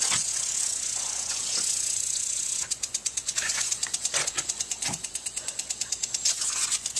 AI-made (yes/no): yes